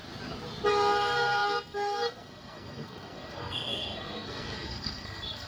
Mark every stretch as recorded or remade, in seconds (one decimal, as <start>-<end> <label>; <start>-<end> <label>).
0.0-0.7 recorded; 0.7-5.5 remade